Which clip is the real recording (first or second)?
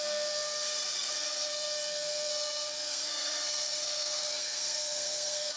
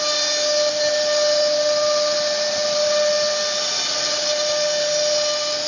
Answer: second